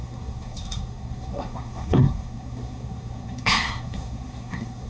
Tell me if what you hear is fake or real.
fake